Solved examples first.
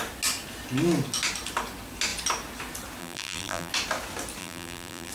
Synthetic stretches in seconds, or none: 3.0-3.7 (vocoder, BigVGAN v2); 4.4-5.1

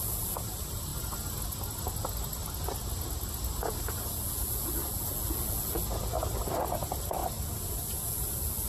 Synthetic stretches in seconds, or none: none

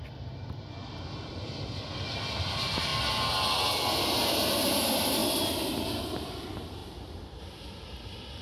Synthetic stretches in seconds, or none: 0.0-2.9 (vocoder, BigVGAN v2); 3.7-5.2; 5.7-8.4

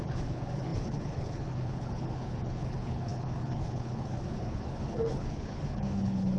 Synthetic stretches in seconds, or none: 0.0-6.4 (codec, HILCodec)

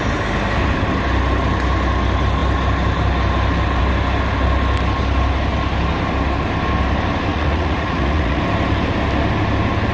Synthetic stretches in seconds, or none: 7.3-8.4 (vocoder, Vocos)

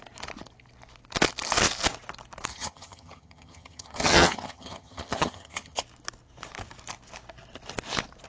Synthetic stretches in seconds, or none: 2.5-5.8 (vocoder, HiFi-GAN)

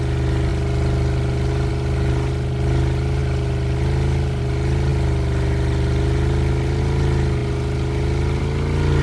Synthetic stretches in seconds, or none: none

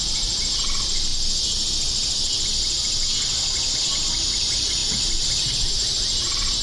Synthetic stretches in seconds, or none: 0.0-1.1 (vocoder, BigVGAN v2); 3.4-6.6